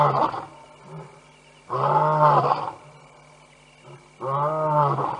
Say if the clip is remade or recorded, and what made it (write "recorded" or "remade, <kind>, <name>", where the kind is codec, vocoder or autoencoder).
recorded